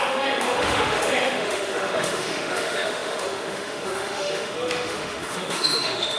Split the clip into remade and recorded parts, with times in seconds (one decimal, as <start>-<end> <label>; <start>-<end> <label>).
0.0-6.2 remade